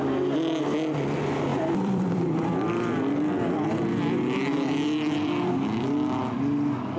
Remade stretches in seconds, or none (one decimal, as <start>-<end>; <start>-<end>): 1.5-5.5